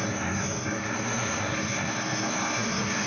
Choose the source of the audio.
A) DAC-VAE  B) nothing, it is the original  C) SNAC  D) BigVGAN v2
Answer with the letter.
C